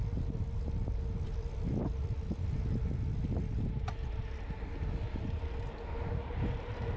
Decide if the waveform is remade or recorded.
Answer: recorded